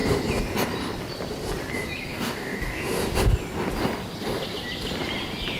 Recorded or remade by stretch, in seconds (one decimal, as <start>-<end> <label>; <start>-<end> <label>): 0.0-2.1 recorded; 2.1-2.8 remade; 2.8-5.6 recorded